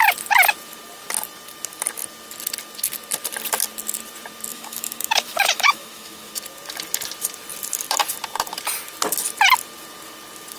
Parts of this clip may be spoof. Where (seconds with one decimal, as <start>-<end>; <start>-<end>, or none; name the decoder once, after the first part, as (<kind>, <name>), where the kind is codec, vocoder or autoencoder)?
4.5-6.3 (autoencoder, DAC-VAE)